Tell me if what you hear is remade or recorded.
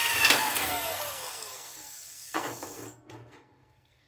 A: remade